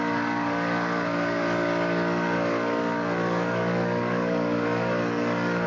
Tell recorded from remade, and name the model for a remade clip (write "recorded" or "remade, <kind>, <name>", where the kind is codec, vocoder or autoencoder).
remade, codec, DAC